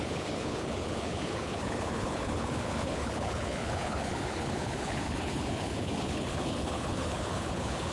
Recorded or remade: remade